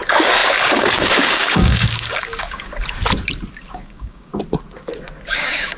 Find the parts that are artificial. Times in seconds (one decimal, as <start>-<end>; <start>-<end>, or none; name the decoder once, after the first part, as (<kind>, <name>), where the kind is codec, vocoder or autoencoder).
0.0-2.7 (codec, DAC); 3.7-4.3; 5.3-5.8